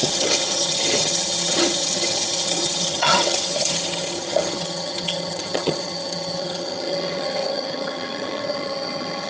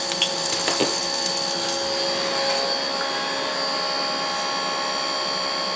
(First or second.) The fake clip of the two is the first